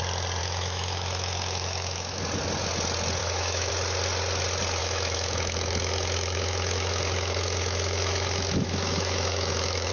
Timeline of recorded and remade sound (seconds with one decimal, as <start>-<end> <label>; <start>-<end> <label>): 0.0-0.4 recorded; 0.4-2.2 remade; 2.2-3.2 recorded; 3.2-3.7 remade; 3.7-4.8 recorded; 4.8-9.9 remade